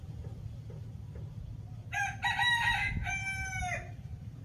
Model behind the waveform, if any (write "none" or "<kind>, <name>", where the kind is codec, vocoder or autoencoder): none